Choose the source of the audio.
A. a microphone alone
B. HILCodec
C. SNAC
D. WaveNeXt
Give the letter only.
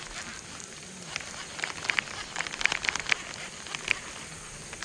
A